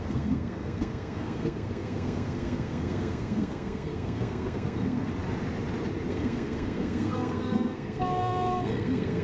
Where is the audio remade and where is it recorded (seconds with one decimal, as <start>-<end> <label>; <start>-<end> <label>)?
0.0-5.1 remade; 5.1-6.1 recorded; 6.1-9.2 remade